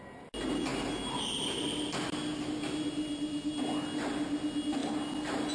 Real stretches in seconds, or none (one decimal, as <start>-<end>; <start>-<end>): 0.0-5.5